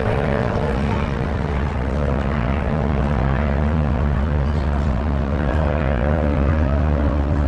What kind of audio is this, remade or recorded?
remade